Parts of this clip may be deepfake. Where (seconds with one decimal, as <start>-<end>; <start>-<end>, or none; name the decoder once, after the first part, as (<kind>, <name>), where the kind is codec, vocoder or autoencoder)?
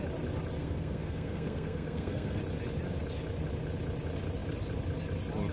0.6-2.4 (codec, SNAC)